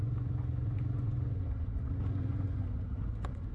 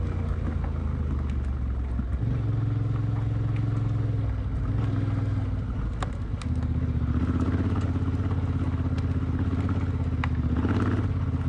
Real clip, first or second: second